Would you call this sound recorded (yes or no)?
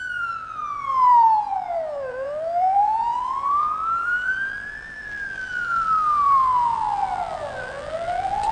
no